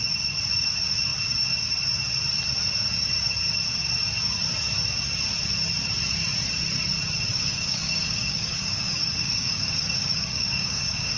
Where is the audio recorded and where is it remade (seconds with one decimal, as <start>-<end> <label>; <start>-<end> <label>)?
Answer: 0.0-7.3 recorded; 7.3-11.2 remade